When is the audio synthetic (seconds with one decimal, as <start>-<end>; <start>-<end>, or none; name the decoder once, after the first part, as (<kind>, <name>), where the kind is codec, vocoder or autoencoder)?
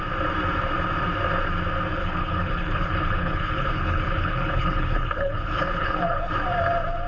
2.0-6.3 (codec, HILCodec)